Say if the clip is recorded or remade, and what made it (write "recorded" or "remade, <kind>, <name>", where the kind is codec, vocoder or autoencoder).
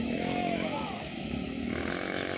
remade, autoencoder, DAC-VAE